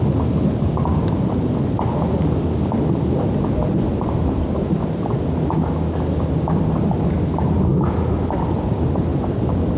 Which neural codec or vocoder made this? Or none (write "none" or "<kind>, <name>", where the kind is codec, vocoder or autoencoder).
none